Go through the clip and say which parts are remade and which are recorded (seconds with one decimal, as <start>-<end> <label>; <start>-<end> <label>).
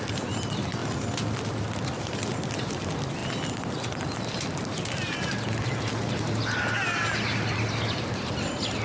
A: 0.0-8.8 recorded